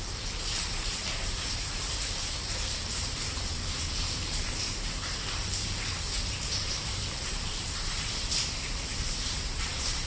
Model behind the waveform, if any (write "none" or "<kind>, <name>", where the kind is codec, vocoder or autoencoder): vocoder, BigVGAN v2